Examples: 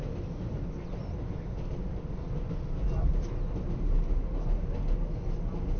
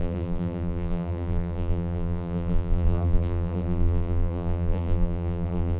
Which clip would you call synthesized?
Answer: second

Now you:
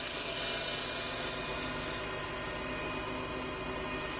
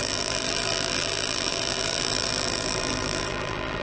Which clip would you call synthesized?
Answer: second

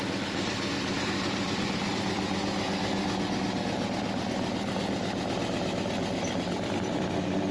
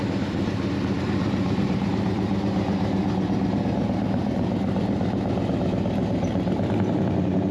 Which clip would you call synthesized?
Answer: second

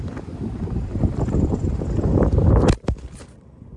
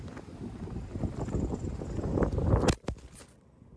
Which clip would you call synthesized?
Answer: first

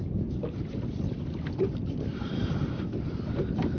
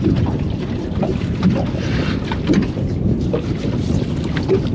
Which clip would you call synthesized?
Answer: first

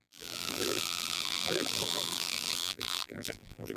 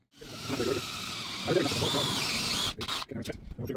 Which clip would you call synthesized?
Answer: first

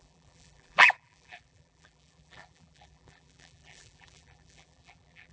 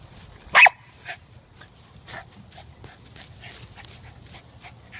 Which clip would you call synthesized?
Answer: first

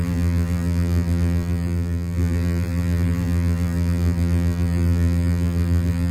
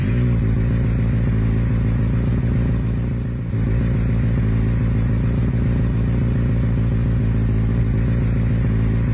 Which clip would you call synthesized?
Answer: first